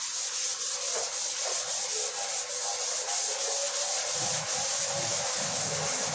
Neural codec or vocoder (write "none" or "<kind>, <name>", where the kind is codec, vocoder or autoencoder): none